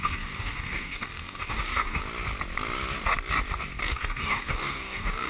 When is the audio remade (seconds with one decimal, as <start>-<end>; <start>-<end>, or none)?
0.0-2.0; 3.8-5.3